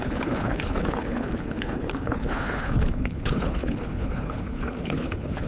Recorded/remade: remade